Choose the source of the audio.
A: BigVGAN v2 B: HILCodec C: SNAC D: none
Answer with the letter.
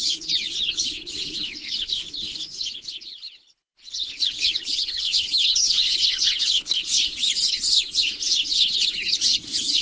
B